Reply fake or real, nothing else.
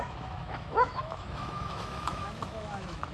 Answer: fake